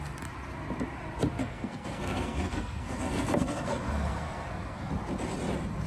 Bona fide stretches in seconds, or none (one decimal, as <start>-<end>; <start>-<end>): 0.0-1.4; 4.9-5.9